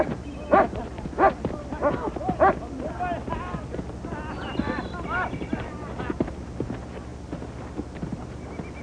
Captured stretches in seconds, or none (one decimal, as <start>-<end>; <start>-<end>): 0.0-8.8